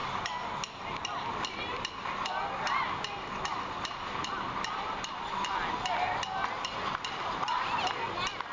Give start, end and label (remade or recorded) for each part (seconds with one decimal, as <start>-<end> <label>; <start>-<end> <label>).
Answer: 0.0-8.5 recorded